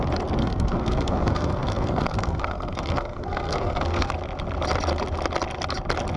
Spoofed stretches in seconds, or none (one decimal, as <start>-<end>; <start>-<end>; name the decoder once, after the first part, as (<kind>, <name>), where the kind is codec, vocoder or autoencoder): 0.4-4.1 (codec, SNAC)